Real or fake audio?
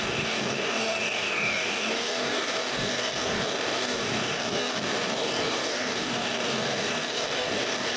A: fake